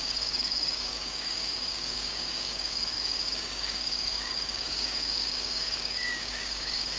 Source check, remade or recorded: remade